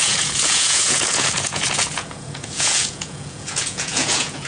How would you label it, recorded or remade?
remade